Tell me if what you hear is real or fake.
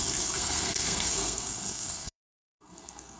fake